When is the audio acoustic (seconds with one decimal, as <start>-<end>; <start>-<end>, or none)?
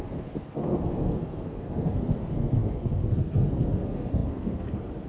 none